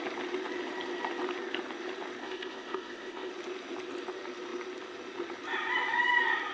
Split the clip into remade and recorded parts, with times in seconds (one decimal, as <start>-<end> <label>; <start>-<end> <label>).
0.0-2.2 recorded; 2.2-3.3 remade; 3.3-6.5 recorded